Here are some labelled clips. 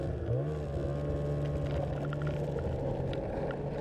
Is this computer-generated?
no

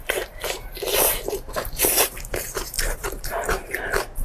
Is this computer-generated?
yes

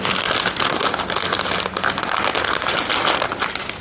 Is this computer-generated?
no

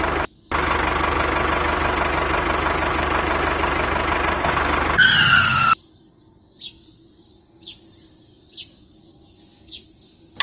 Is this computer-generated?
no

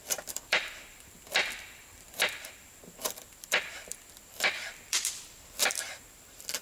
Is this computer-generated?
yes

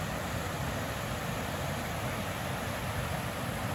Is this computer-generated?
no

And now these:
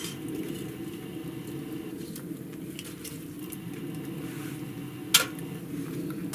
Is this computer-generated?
no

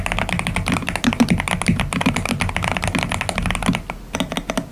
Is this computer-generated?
no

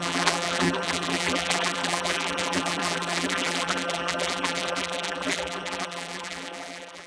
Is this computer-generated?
yes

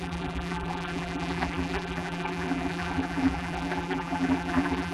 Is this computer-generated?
yes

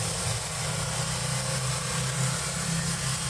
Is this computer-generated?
no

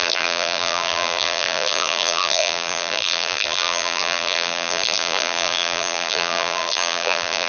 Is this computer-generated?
yes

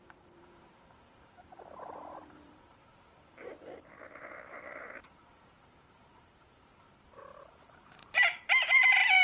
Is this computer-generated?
yes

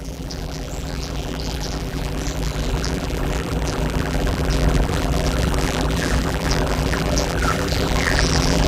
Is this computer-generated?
yes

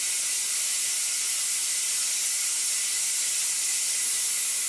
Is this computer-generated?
no